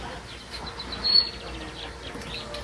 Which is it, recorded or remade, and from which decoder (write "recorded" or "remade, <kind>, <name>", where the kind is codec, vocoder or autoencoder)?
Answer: recorded